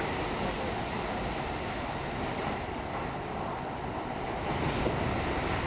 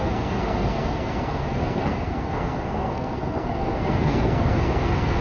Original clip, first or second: first